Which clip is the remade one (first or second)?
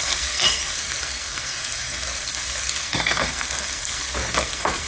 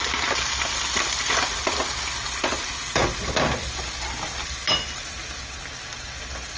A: first